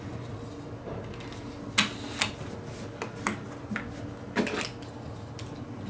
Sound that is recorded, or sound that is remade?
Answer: recorded